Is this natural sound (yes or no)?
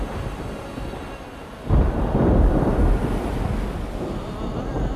yes